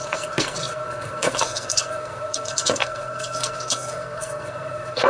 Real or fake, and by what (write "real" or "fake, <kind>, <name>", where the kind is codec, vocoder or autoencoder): fake, codec, SNAC